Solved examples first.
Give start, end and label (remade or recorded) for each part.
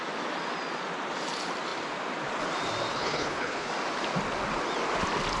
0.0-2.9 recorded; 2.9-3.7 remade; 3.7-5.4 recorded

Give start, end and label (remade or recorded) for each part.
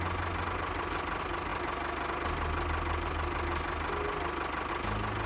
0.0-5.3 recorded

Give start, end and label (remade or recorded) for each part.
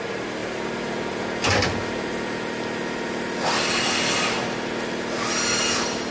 0.0-6.1 recorded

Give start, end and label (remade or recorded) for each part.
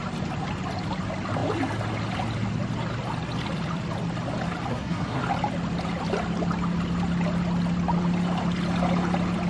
0.0-4.7 recorded; 4.7-5.2 remade; 5.2-9.5 recorded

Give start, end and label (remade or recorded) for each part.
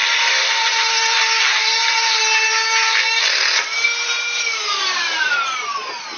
0.0-2.2 remade; 2.2-6.2 recorded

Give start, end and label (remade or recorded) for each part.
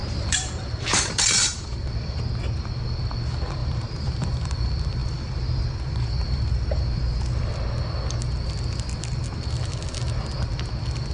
0.0-2.2 remade; 2.2-3.6 recorded; 3.6-4.5 remade; 4.5-5.0 recorded; 5.0-7.5 remade; 7.5-11.1 recorded